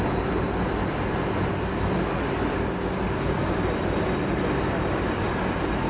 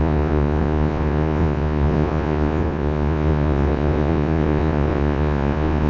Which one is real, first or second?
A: first